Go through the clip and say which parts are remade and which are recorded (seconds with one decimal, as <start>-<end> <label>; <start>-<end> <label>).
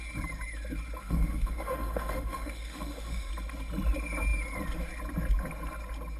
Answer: 0.0-1.0 recorded; 1.0-3.3 remade; 3.3-6.2 recorded